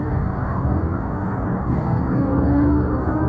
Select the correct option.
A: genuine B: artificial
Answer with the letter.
B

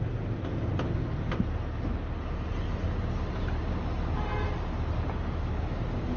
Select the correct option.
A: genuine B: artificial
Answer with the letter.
A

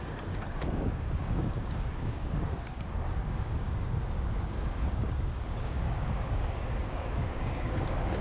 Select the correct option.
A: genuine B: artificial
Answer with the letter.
B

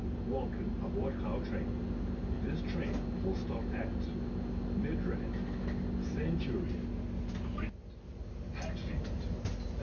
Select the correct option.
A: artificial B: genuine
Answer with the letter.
B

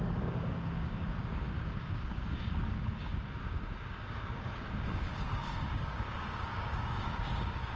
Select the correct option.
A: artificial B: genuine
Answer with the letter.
A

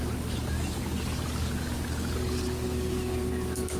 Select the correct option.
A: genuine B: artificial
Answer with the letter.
B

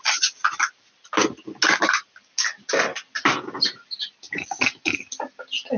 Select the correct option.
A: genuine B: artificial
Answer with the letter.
A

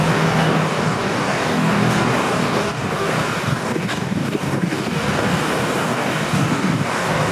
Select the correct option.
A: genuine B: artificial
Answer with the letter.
B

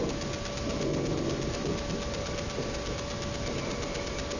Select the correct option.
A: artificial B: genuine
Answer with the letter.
B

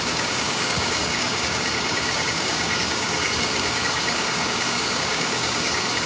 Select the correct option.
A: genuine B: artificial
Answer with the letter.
B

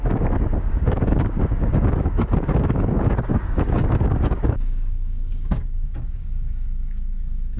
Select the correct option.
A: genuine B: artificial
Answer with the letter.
B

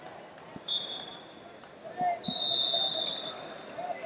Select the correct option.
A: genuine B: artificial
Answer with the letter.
A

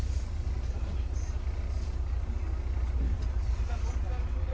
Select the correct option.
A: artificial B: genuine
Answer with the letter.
B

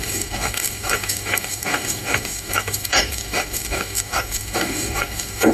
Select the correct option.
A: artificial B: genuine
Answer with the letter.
A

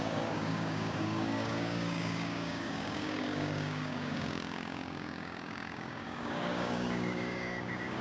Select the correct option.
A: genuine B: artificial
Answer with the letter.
B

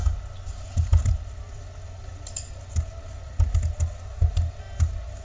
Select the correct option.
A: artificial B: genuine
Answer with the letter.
B